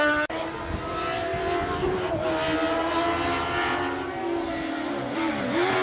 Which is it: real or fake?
real